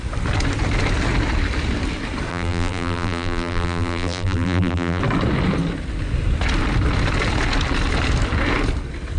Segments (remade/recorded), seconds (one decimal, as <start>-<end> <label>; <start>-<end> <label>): 0.0-2.3 recorded; 2.3-5.0 remade; 5.0-9.2 recorded